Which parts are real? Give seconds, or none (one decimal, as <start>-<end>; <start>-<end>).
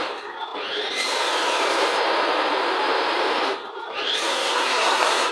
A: 0.0-4.3